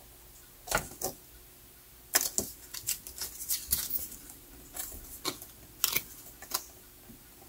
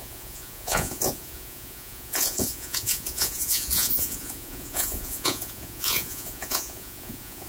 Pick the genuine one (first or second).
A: first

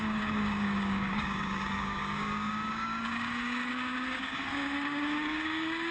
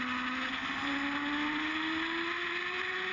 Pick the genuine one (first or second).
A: second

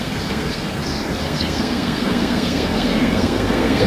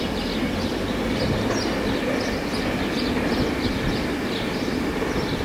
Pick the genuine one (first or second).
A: second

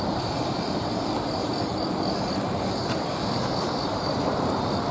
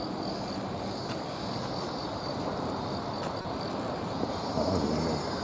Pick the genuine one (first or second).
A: second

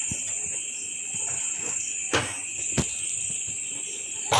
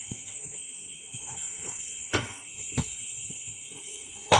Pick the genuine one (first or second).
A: first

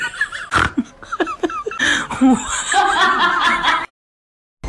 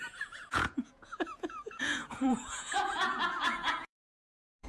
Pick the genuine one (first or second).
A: first